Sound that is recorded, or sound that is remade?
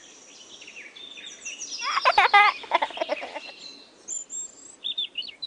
recorded